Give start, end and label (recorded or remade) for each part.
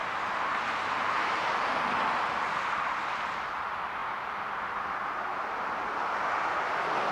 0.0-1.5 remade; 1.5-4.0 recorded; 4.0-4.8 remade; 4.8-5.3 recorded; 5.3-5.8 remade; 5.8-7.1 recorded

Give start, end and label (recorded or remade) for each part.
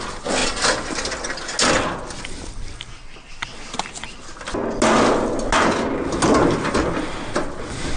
0.0-8.0 recorded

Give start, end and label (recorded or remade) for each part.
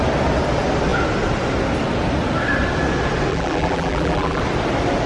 0.0-3.3 recorded; 3.3-4.4 remade; 4.4-5.1 recorded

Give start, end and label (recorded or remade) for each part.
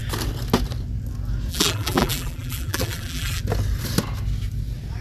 0.0-1.5 recorded; 1.5-3.4 remade; 3.4-5.0 recorded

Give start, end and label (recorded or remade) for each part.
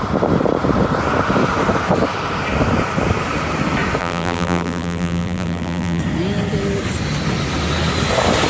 0.0-4.0 recorded; 4.0-6.0 remade; 6.0-8.5 recorded